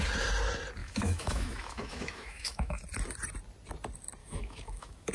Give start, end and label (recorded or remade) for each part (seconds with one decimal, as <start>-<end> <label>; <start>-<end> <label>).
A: 0.0-0.8 recorded; 0.8-2.8 remade; 2.8-4.2 recorded; 4.2-5.1 remade